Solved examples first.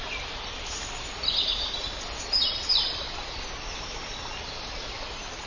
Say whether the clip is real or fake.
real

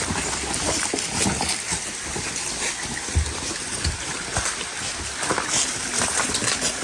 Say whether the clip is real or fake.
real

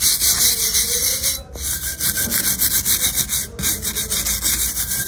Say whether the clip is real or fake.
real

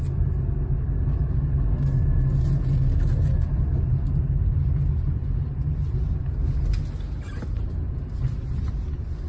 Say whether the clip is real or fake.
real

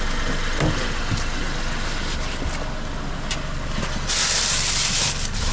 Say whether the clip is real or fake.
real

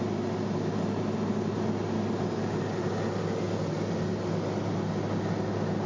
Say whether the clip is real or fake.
real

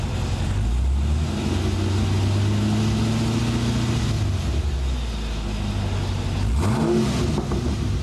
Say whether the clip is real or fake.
real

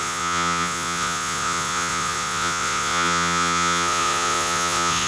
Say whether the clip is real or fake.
fake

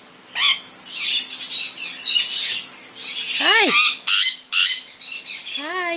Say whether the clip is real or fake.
real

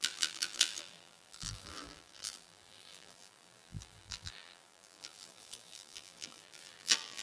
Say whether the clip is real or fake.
fake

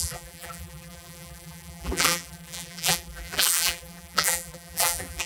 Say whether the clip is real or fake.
fake